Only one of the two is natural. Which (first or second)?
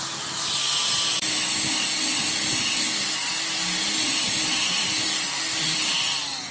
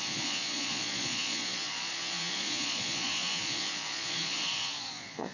first